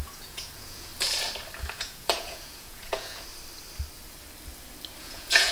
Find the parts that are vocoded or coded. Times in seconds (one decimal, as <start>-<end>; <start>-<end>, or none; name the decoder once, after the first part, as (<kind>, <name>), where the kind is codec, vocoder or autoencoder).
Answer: 0.0-0.9 (vocoder, Vocos); 1.7-3.3; 5.0-5.5